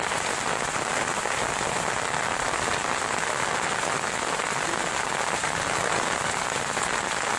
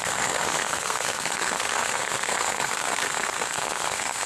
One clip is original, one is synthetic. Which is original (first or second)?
first